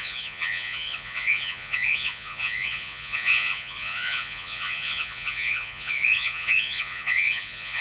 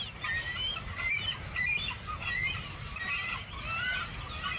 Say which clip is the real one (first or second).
second